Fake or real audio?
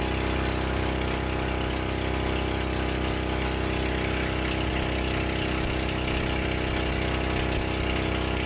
real